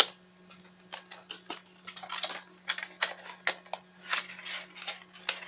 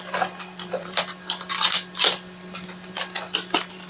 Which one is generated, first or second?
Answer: second